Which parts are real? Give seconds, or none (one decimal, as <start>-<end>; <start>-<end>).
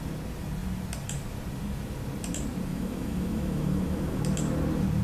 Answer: 0.0-2.7; 4.2-5.0